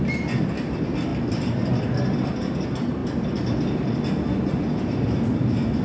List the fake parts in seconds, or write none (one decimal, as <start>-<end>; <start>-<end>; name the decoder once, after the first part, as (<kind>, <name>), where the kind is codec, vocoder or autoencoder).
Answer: none